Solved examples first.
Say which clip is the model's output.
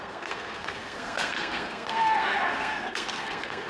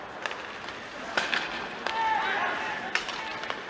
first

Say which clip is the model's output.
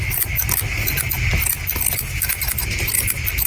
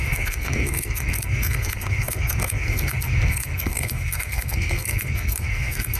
second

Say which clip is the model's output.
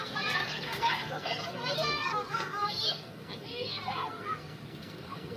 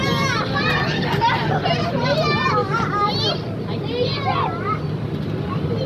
first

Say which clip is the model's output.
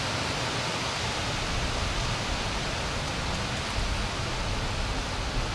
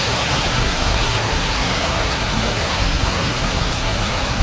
second